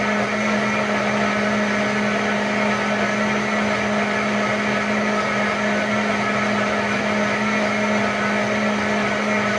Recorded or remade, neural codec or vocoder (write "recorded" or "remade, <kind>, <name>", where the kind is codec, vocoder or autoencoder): recorded